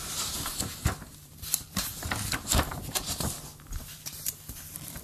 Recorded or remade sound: remade